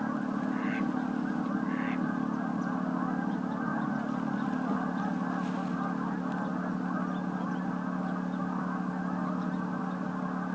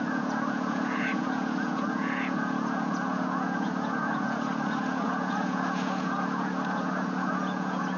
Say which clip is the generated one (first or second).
second